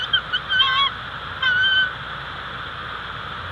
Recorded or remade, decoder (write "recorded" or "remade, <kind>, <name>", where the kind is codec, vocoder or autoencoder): recorded